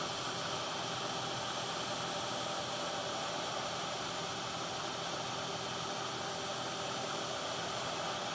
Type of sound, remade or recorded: recorded